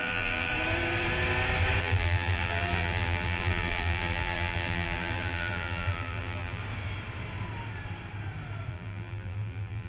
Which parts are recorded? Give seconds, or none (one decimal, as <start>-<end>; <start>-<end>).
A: 0.5-1.8; 6.6-8.7